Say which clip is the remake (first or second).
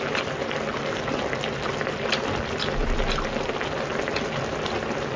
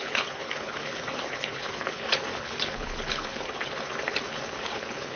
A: second